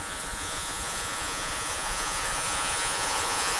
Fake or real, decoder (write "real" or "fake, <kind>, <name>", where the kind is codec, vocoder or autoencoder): fake, vocoder, Vocos